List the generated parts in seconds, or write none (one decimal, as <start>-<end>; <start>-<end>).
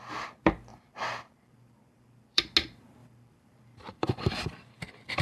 0.7-2.4; 3.0-5.2